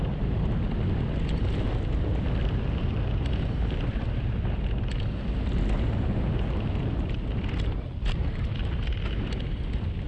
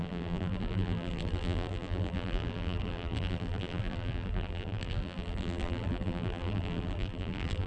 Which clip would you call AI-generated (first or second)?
second